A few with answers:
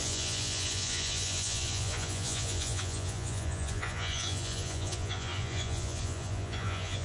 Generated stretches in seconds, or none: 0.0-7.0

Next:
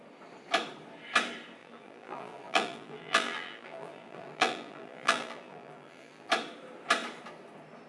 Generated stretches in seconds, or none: 1.6-6.3

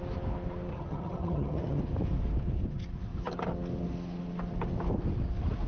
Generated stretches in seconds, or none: 0.7-1.8

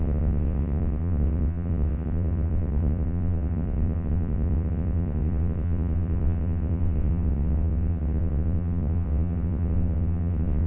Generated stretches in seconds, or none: 0.0-10.7